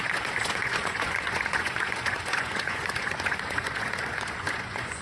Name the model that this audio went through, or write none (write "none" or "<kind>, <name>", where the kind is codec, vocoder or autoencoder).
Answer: vocoder, Vocos